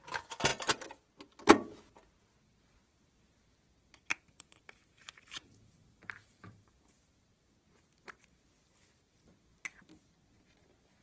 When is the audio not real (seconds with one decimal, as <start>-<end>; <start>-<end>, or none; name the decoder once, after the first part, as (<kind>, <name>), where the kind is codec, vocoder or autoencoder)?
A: 4.1-7.1 (vocoder, BigVGAN v2)